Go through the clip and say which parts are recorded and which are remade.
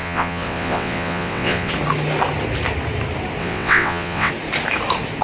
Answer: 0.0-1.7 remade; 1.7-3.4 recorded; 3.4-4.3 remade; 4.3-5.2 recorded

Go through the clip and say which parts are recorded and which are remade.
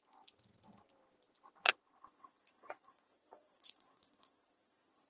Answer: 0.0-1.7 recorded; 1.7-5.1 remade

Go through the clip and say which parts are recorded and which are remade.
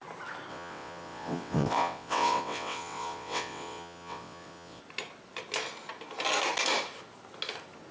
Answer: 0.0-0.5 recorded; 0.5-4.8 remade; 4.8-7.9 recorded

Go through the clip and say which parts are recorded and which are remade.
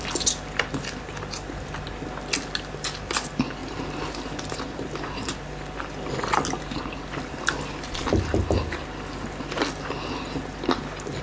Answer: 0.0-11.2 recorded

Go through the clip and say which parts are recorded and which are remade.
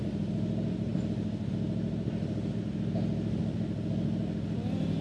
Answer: 0.0-5.0 recorded